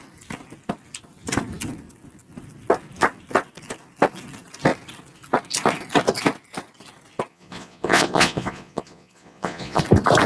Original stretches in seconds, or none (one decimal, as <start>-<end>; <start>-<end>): 0.0-7.3; 9.8-10.3